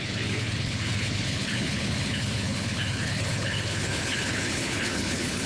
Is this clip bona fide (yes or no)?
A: no